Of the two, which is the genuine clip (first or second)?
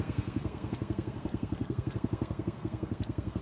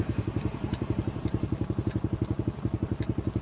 second